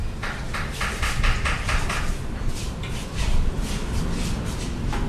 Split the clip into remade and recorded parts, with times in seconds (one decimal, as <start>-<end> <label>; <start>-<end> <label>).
0.0-5.1 remade